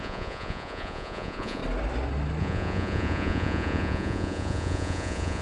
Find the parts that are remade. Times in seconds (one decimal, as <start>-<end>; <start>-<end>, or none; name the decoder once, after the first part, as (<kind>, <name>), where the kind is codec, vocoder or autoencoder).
0.0-1.6 (vocoder, Vocos); 2.4-5.4